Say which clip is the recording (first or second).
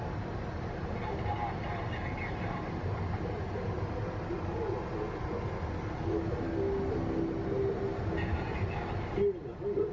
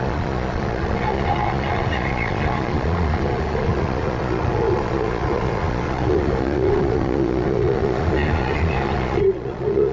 first